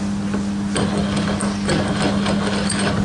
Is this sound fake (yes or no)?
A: no